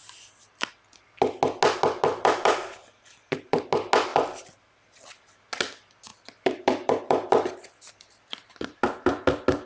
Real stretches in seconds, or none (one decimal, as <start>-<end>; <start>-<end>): 0.0-2.1; 3.6-6.1; 7.9-9.7